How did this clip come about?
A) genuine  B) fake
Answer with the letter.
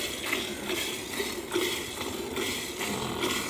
A